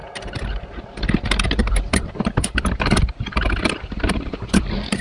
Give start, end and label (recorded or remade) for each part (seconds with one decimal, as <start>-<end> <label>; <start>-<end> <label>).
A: 0.0-1.6 recorded; 1.6-4.6 remade; 4.6-5.0 recorded